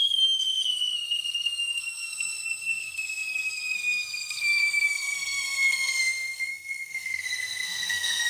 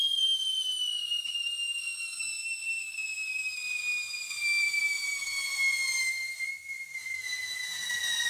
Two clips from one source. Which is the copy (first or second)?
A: first